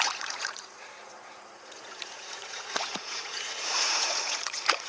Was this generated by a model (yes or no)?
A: yes